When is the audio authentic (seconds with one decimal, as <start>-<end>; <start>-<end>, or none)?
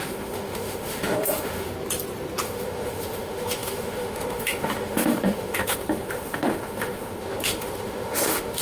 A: 1.7-2.4